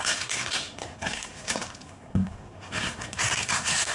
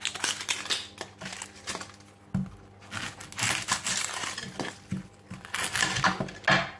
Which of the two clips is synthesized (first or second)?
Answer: first